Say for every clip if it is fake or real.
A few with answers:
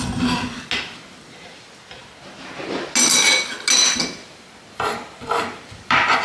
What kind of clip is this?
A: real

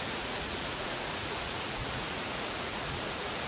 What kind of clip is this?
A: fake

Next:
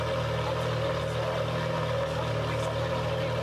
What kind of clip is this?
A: real